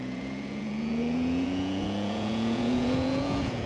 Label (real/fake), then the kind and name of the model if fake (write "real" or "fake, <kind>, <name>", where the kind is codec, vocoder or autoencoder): fake, vocoder, Vocos